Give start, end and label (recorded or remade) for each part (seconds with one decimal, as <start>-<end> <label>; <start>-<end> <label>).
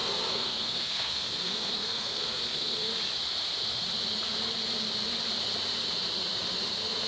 0.0-2.9 remade; 2.9-7.1 recorded